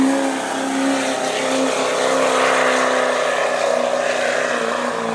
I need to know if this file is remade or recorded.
recorded